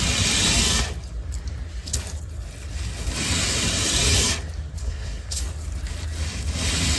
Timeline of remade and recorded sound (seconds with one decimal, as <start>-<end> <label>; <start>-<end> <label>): 0.0-4.8 recorded; 4.8-5.4 remade; 5.4-7.0 recorded